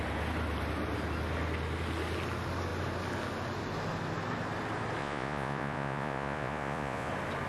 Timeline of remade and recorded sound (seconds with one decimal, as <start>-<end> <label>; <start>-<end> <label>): 0.0-5.0 recorded; 5.0-7.1 remade; 7.1-7.5 recorded